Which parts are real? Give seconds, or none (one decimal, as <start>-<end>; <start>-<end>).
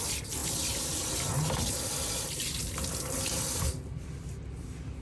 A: 0.0-5.0